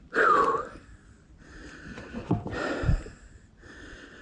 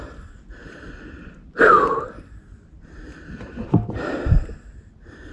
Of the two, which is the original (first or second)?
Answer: second